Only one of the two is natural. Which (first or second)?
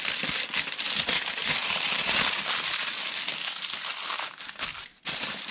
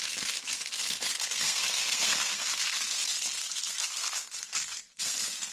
first